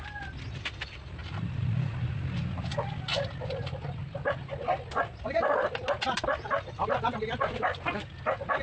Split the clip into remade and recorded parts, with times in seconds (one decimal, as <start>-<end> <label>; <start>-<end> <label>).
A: 0.0-1.2 recorded; 1.2-2.1 remade; 2.1-8.6 recorded